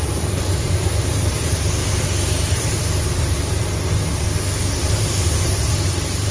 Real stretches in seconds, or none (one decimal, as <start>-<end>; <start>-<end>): 1.8-5.3